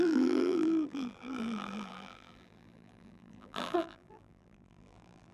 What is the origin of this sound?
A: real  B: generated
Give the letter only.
B